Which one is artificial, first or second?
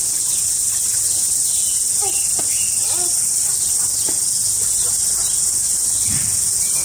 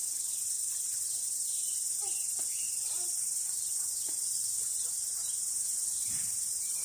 second